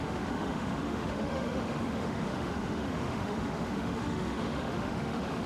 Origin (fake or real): fake